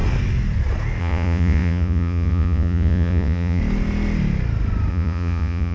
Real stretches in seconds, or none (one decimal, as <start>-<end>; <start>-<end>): 0.0-1.0; 3.6-4.9